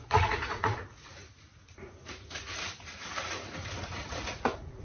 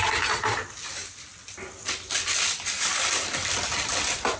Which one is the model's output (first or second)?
first